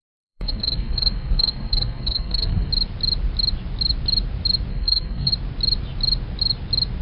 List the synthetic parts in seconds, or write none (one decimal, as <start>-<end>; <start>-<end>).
0.0-2.7; 4.7-5.3